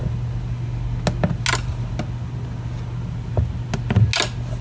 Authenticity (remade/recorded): recorded